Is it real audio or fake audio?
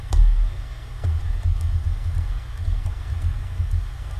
fake